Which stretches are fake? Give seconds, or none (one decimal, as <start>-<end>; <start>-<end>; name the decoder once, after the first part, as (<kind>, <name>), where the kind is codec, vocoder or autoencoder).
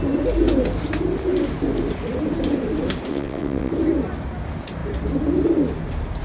3.1-3.7 (vocoder, WaveNeXt)